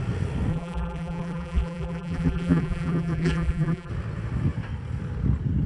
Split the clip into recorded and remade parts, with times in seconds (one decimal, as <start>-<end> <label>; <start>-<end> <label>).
0.0-0.5 recorded; 0.5-3.9 remade; 3.9-5.7 recorded

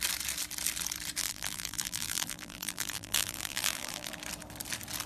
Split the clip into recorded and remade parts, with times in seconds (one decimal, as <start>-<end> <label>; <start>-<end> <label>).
0.0-1.2 recorded; 1.2-4.1 remade; 4.1-5.1 recorded

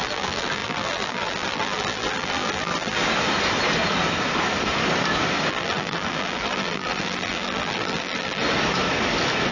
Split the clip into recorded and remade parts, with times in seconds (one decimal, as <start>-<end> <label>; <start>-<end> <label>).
0.0-3.0 remade; 3.0-5.5 recorded; 5.5-8.4 remade; 8.4-9.5 recorded

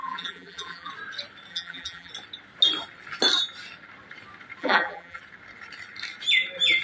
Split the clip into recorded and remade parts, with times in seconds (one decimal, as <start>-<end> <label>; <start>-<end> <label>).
0.0-0.9 remade; 0.9-1.5 recorded; 1.5-2.1 remade; 2.1-4.6 recorded; 4.6-5.2 remade; 5.2-6.8 recorded

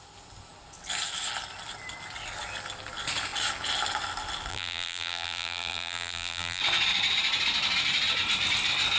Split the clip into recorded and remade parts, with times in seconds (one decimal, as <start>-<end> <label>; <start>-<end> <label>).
0.0-4.5 recorded; 4.5-6.6 remade; 6.6-9.0 recorded